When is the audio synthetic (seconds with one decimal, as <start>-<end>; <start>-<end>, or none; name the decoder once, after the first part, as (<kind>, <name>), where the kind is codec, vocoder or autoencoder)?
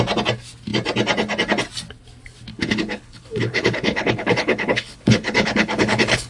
2.5-6.3 (codec, HILCodec)